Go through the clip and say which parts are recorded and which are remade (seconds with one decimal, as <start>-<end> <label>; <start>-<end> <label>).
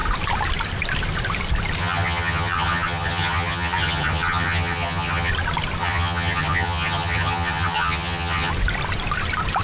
0.0-1.8 recorded; 1.8-5.3 remade; 5.3-5.8 recorded; 5.8-8.5 remade; 8.5-9.6 recorded